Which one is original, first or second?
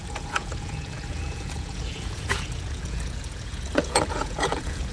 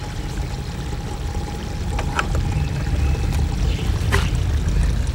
second